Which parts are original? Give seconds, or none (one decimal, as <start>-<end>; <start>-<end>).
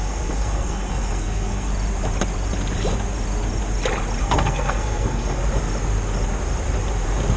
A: 1.7-4.2; 5.4-7.4